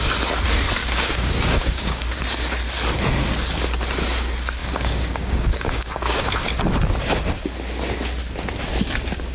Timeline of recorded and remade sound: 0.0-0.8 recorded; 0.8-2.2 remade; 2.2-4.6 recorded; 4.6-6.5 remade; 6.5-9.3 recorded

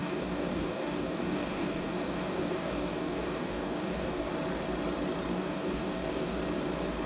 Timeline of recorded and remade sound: 0.0-4.3 remade; 4.3-5.3 recorded; 5.3-6.4 remade; 6.4-7.1 recorded

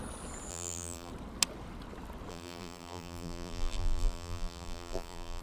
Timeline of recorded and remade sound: 0.0-0.5 recorded; 0.5-1.1 remade; 1.1-2.3 recorded; 2.3-5.4 remade

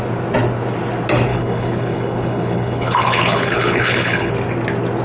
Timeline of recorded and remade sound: 0.0-1.3 recorded; 1.3-4.3 remade; 4.3-5.0 recorded

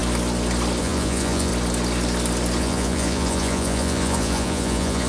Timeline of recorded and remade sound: 0.0-0.8 recorded; 0.8-1.5 remade; 1.5-2.6 recorded; 2.6-5.1 remade

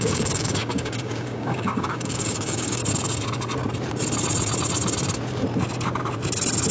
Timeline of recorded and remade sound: 0.0-2.8 remade; 2.8-6.7 recorded

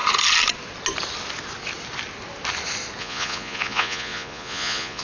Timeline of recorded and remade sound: 0.0-3.0 recorded; 3.0-5.0 remade